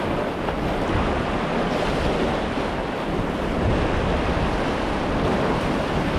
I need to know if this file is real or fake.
real